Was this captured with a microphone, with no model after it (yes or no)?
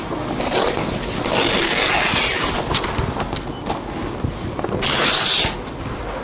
yes